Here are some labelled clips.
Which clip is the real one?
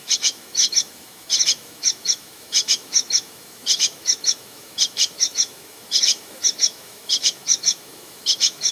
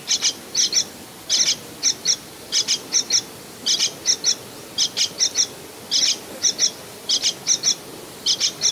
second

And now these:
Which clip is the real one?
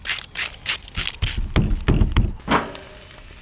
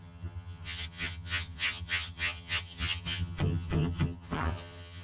first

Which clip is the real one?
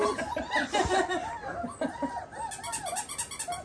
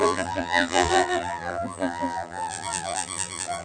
first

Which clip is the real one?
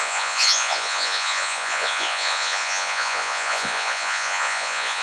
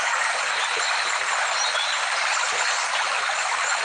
second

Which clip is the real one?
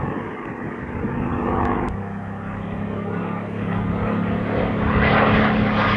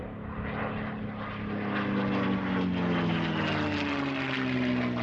second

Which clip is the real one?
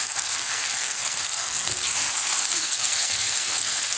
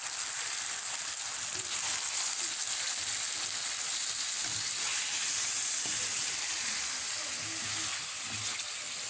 second